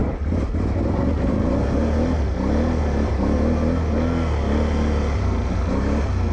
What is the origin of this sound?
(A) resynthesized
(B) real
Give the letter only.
B